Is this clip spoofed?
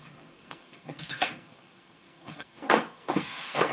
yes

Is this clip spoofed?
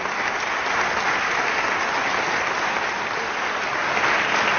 no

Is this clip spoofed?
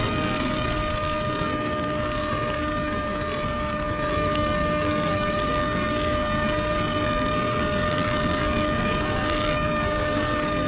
yes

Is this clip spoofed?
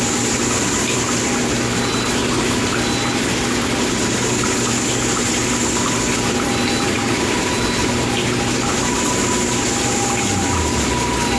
no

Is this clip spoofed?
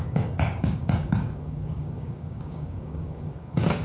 yes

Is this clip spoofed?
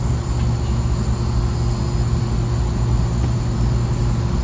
no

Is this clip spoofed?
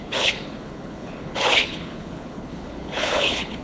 yes